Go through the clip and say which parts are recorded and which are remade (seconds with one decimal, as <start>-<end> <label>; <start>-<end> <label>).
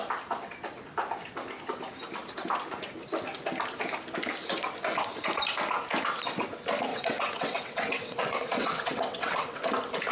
0.0-6.9 recorded; 6.9-9.7 remade; 9.7-10.1 recorded